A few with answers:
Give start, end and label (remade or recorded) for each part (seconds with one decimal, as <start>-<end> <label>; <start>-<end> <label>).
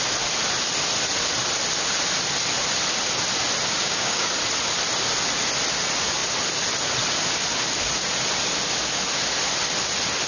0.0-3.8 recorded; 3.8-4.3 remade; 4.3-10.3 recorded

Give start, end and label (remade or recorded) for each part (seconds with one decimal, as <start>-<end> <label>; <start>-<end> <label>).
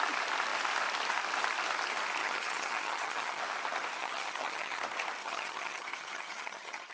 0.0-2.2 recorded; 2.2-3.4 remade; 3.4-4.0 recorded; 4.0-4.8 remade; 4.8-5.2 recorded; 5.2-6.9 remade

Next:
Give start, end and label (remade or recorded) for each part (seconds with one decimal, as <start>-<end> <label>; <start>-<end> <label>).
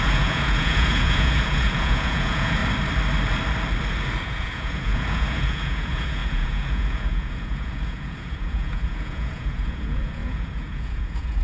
0.0-2.6 remade; 2.6-4.2 recorded; 4.2-11.4 remade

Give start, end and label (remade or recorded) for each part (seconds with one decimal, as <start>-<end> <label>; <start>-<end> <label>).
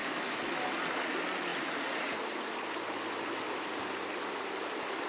0.0-0.6 remade; 0.6-5.1 recorded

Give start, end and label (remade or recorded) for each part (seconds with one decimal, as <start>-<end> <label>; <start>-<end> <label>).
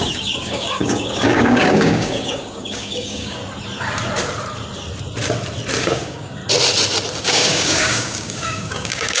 0.0-3.4 remade; 3.4-5.8 recorded; 5.8-6.4 remade; 6.4-7.2 recorded; 7.2-9.2 remade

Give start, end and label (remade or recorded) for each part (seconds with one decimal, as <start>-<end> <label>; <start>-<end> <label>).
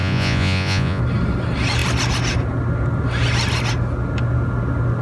0.0-1.0 remade; 1.0-5.0 recorded